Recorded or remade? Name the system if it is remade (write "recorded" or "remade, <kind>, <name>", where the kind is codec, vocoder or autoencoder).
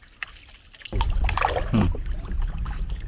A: recorded